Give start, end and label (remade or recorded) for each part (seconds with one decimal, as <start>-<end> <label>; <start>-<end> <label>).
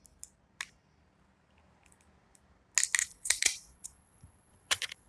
0.0-3.0 recorded; 3.0-5.1 remade